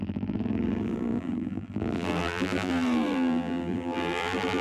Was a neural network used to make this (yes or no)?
yes